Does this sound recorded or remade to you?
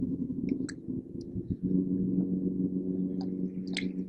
recorded